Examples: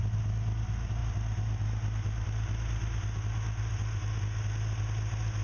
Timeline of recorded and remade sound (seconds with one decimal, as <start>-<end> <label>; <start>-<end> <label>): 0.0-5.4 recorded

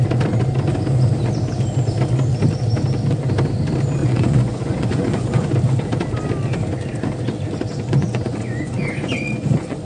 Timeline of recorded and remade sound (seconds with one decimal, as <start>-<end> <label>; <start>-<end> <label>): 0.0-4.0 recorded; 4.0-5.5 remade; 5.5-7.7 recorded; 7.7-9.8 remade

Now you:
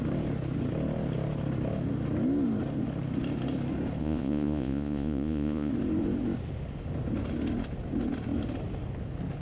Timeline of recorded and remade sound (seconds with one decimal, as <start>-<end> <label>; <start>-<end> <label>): 0.0-4.0 recorded; 4.0-5.7 remade; 5.7-9.4 recorded

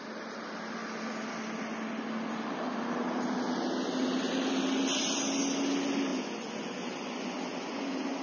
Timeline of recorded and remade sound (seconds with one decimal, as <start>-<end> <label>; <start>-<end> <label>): 0.0-6.1 recorded; 6.1-8.2 remade

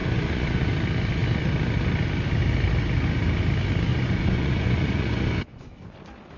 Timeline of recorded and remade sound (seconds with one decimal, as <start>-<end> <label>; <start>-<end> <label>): 0.0-0.7 remade; 0.7-3.9 recorded; 3.9-5.7 remade; 5.7-6.4 recorded

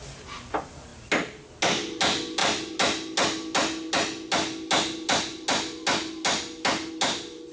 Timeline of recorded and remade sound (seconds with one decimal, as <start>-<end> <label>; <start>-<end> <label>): 0.0-7.5 recorded